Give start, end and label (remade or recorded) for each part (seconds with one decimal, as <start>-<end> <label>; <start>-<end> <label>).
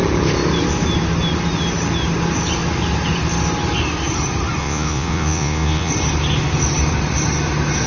0.0-4.6 recorded; 4.6-5.9 remade; 5.9-7.9 recorded